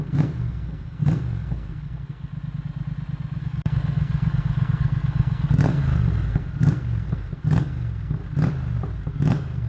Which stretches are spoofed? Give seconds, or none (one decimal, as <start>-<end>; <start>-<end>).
0.0-2.3; 3.4-8.2; 9.0-9.7